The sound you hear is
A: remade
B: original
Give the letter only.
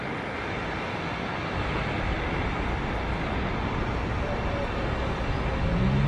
B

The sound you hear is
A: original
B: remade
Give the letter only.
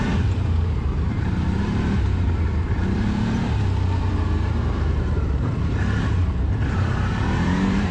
B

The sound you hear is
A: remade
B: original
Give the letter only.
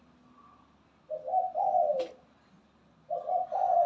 B